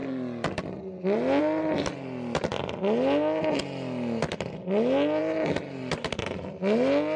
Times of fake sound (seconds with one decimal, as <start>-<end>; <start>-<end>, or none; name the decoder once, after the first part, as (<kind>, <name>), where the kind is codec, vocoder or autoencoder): none